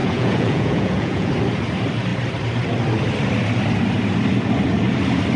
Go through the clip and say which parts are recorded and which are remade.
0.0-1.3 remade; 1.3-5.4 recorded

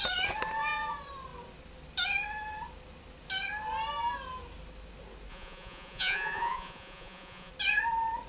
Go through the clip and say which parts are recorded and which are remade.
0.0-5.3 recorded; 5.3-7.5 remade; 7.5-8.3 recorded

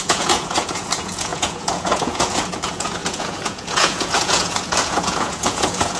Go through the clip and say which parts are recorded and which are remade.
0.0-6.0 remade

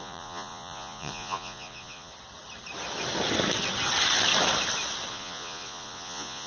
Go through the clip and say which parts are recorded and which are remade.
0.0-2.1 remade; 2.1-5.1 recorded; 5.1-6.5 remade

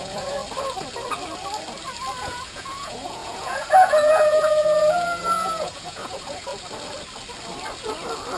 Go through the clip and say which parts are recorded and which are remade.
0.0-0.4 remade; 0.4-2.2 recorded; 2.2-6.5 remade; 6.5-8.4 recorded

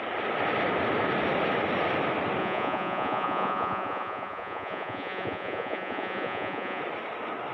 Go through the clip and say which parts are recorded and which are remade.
0.0-2.4 recorded; 2.4-6.8 remade; 6.8-7.5 recorded